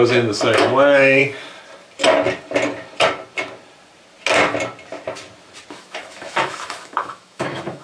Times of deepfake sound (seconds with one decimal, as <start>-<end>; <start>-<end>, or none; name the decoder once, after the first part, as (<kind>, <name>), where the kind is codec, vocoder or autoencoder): 0.0-1.2 (autoencoder, DAC-VAE); 5.7-7.8